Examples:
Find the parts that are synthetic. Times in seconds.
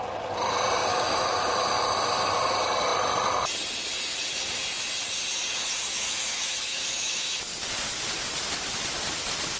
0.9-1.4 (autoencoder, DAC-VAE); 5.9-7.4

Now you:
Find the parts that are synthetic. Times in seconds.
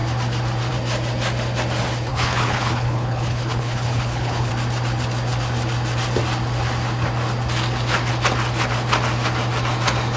2.1-4.5 (codec, HILCodec)